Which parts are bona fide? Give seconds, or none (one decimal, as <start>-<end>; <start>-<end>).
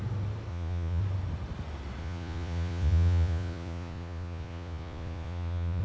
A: 0.0-0.5; 1.0-2.0